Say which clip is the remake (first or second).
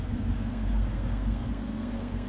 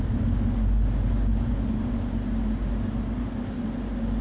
first